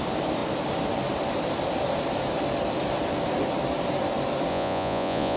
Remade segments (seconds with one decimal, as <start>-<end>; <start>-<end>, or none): 4.5-5.4